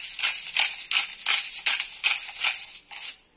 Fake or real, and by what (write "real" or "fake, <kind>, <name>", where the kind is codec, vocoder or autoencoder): real